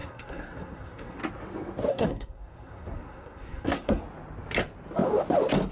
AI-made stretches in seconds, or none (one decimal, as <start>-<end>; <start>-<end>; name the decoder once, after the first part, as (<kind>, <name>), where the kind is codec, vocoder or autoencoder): 0.0-1.2 (codec, SNAC); 1.9-4.0